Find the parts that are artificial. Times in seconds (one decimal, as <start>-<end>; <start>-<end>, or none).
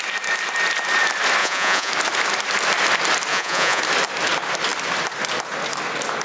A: 1.4-1.9; 3.3-3.8